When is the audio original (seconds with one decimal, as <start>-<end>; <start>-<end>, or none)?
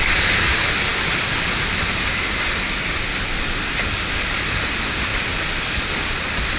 0.0-6.6